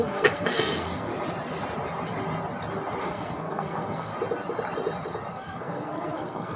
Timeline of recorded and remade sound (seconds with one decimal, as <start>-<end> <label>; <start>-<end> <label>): 0.0-1.1 remade; 1.1-3.0 recorded; 3.0-4.1 remade; 4.1-5.3 recorded; 5.3-6.6 remade